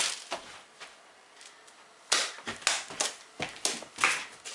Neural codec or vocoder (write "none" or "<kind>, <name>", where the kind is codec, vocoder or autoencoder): none